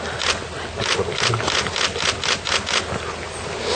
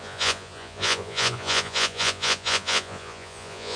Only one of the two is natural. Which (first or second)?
first